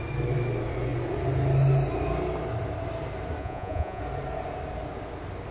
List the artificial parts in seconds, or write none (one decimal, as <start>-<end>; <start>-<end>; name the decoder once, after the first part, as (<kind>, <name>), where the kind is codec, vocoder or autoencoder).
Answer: 3.4-4.0 (vocoder, Vocos)